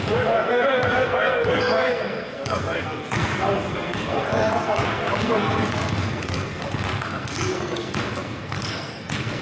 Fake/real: fake